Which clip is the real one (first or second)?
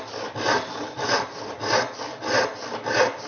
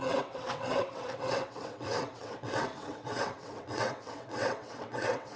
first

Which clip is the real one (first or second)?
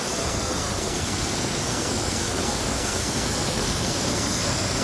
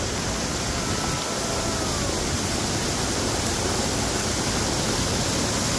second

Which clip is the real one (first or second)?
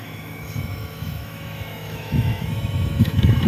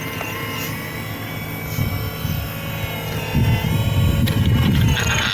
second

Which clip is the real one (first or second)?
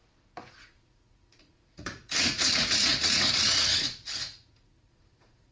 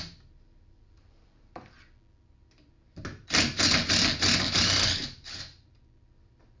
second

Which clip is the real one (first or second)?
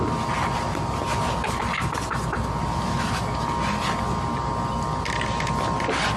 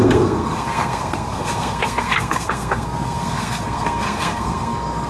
first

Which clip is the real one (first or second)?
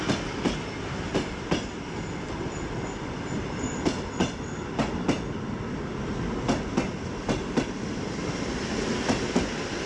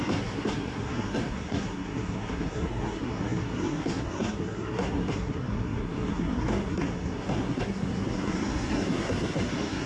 first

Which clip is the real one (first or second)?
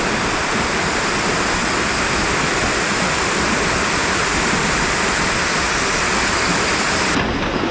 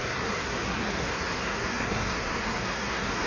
first